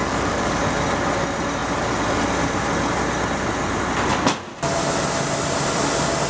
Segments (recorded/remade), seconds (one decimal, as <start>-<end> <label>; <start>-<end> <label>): 0.0-0.6 remade; 0.6-6.3 recorded